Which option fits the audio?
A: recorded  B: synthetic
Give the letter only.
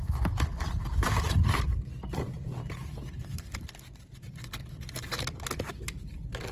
A